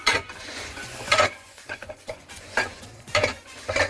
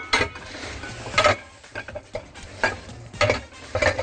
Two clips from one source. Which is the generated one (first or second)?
first